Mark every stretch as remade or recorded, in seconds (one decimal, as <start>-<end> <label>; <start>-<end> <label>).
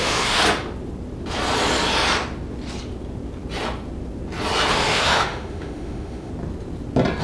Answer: 0.0-0.4 remade; 0.4-4.7 recorded; 4.7-6.3 remade; 6.3-7.2 recorded